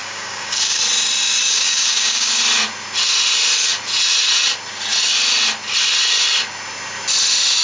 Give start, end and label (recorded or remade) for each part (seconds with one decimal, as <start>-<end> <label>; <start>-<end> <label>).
0.0-0.8 remade; 0.8-1.4 recorded; 1.4-2.4 remade; 2.4-7.6 recorded